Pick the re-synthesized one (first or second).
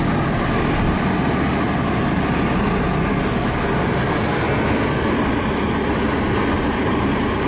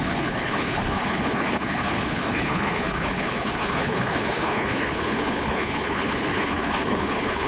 second